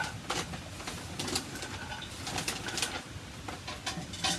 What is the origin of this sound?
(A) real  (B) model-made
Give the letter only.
A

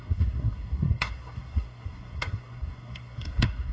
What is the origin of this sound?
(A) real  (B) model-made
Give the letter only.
B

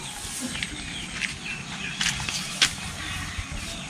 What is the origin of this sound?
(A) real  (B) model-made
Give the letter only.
A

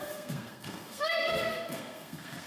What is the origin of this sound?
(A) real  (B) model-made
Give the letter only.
B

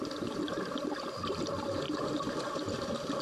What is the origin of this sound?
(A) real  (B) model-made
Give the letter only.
A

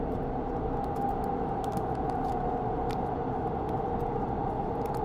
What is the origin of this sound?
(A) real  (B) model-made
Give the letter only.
A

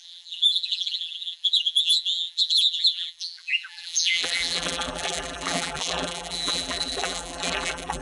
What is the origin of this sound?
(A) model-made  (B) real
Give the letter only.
A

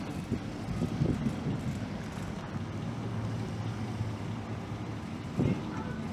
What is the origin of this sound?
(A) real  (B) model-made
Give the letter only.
A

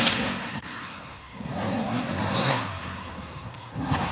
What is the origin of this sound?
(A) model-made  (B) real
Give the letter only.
A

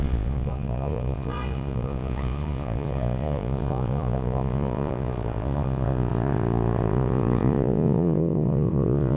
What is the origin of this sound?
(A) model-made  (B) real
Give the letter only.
A